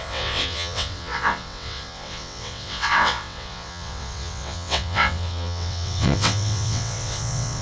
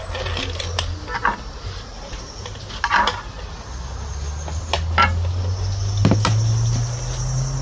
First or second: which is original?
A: second